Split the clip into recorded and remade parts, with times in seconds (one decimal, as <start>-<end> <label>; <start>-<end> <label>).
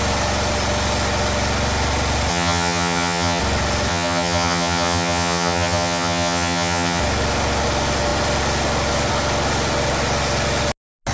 0.0-2.3 recorded; 2.3-3.4 remade; 3.4-3.9 recorded; 3.9-7.0 remade; 7.0-11.1 recorded